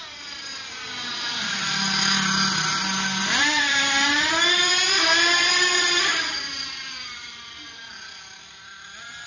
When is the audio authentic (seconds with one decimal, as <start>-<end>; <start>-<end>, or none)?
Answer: 0.0-3.2; 7.8-9.3